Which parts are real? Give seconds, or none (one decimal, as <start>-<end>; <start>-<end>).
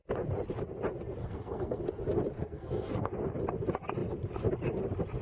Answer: 0.0-1.2; 1.8-2.4; 3.1-5.2